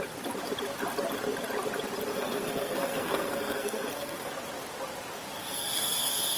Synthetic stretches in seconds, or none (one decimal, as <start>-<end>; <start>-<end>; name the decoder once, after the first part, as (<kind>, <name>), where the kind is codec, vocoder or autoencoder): 2.1-4.3 (codec, SNAC); 5.4-6.4